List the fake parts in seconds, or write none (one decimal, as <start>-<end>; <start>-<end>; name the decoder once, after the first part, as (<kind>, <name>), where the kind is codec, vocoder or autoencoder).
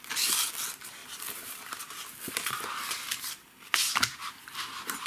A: 1.0-3.4 (vocoder, BigVGAN v2); 4.2-5.1